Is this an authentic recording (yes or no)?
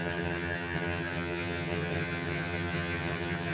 no